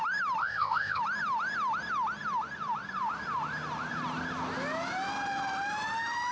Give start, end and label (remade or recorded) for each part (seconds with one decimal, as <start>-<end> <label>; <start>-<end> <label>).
0.0-0.4 recorded; 0.4-1.0 remade; 1.0-6.3 recorded